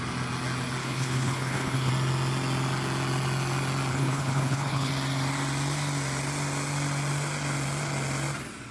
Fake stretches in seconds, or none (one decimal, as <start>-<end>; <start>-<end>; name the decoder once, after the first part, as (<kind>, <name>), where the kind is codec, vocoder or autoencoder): 0.8-1.9 (codec, HILCodec); 3.9-4.9